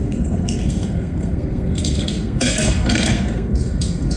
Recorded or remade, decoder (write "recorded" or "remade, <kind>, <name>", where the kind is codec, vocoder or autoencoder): remade, codec, SNAC